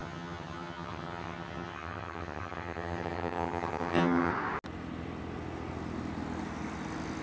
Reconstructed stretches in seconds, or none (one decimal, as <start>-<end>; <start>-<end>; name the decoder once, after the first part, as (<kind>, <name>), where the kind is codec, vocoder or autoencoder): 0.0-4.3 (vocoder, HiFi-GAN)